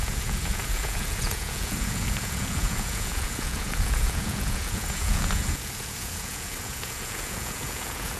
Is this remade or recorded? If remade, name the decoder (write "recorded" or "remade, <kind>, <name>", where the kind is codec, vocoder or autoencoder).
remade, vocoder, Vocos